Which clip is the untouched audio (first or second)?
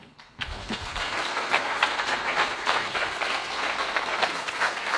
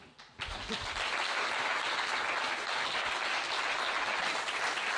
second